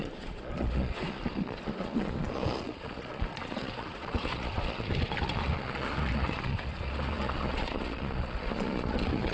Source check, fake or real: fake